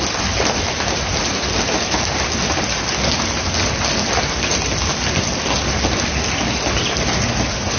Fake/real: real